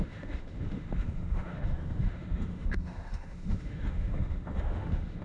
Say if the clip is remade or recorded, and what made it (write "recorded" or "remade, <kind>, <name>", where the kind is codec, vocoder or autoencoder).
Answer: remade, autoencoder, DAC-VAE